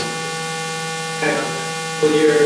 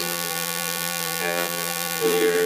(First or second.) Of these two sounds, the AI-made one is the second